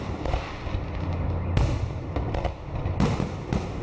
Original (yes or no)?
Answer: yes